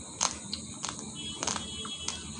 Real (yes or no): yes